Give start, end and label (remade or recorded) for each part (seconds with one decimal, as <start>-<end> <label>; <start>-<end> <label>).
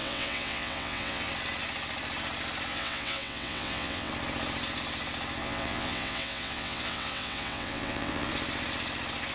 0.0-1.3 remade; 1.3-2.7 recorded; 2.7-4.1 remade; 4.1-5.4 recorded; 5.4-8.3 remade; 8.3-9.3 recorded